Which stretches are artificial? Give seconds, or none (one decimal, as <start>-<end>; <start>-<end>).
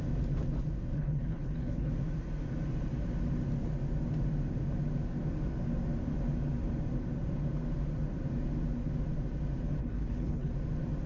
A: 0.9-1.9; 9.8-10.5